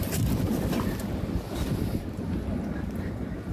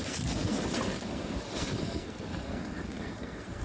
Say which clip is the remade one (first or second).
second